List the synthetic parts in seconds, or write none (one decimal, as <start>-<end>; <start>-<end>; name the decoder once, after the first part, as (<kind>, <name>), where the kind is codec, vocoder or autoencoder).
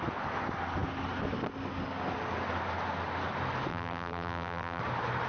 3.7-4.8 (vocoder, BigVGAN v2)